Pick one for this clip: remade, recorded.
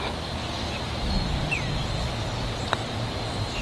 recorded